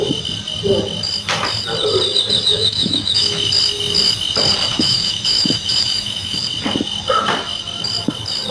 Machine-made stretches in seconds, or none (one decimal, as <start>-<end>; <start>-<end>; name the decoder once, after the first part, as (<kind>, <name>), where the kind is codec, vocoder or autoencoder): 2.5-3.5 (autoencoder, DAC-VAE); 4.7-6.4